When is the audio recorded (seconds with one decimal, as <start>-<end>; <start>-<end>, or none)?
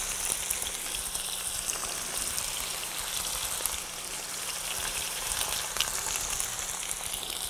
0.0-4.8; 5.4-7.5